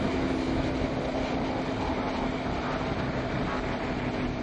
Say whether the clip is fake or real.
real